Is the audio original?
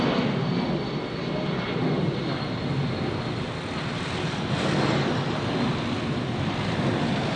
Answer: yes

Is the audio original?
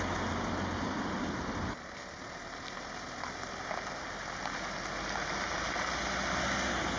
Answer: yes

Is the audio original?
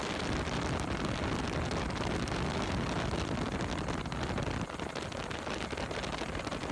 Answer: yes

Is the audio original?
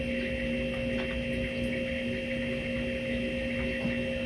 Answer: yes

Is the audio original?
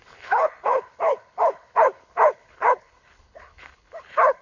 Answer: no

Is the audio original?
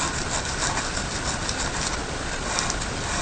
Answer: yes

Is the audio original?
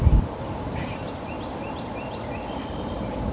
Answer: yes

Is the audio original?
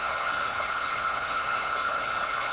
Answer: no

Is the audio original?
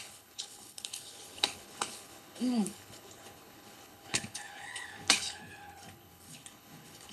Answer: no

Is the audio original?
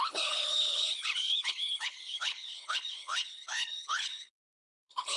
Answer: no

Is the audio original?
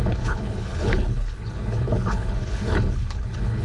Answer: no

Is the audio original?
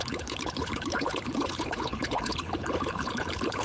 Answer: no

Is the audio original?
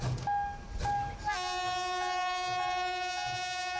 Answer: yes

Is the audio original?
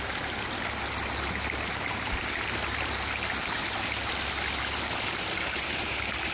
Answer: yes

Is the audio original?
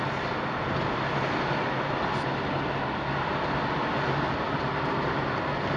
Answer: yes